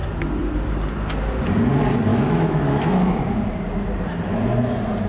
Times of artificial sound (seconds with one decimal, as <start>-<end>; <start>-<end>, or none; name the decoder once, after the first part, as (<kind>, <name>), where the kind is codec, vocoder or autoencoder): 2.1-3.2 (autoencoder, DAC-VAE)